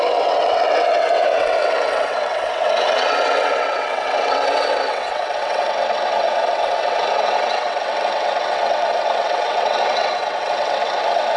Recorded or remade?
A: remade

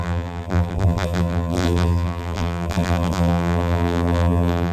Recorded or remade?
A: remade